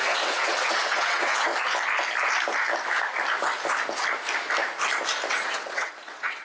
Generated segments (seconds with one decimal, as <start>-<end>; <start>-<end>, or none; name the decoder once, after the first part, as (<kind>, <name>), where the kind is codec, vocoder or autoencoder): 0.0-1.5 (vocoder, WaveNeXt); 5.3-6.4